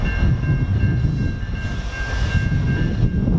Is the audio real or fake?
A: real